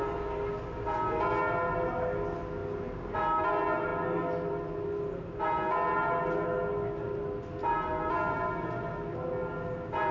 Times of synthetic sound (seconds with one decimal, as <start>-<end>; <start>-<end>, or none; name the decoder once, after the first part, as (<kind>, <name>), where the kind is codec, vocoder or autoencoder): none